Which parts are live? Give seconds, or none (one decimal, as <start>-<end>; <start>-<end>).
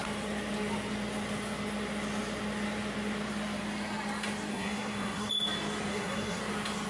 0.0-4.5; 5.3-5.9; 6.4-6.9